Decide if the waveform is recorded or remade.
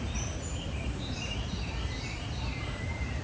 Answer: remade